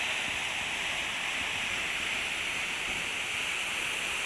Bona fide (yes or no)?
yes